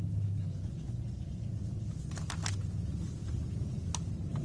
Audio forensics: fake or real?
real